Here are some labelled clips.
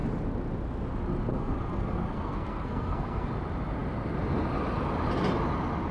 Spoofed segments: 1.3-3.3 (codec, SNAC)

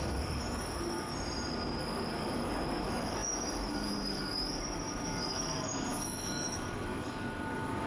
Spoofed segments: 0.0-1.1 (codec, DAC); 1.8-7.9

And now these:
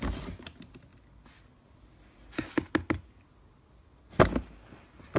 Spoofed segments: none

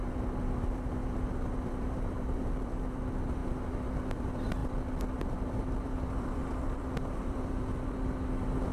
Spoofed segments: 0.0-3.4 (vocoder, BigVGAN v2); 4.1-8.7

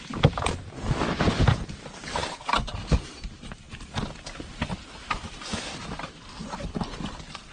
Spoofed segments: none

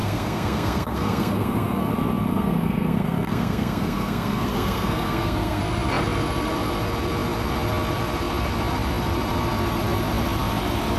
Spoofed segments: 0.0-1.9 (codec, SNAC); 2.3-5.6